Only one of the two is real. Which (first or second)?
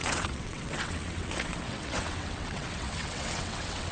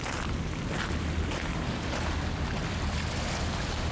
second